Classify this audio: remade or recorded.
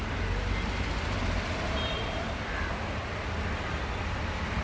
recorded